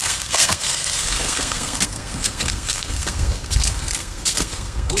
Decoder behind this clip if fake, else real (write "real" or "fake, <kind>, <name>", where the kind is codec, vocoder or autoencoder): fake, codec, SNAC